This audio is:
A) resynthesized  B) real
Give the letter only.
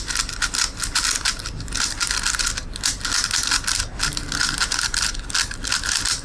B